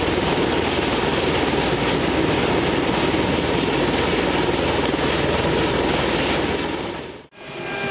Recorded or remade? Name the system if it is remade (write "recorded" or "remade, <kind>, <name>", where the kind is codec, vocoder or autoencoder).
recorded